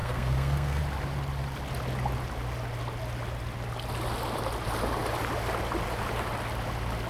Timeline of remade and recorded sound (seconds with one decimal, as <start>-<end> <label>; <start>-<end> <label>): 0.0-0.8 remade; 0.8-7.1 recorded